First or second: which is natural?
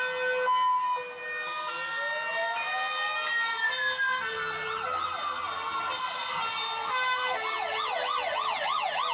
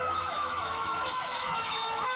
first